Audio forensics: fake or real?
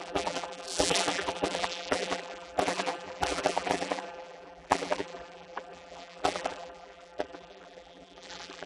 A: fake